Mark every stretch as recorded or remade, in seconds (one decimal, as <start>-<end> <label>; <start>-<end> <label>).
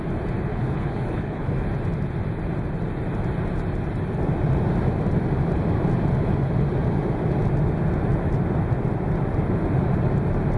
0.0-0.5 recorded; 0.5-1.5 remade; 1.5-10.6 recorded